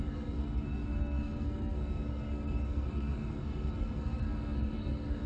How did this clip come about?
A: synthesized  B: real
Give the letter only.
A